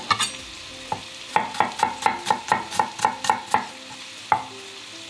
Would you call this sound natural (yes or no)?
yes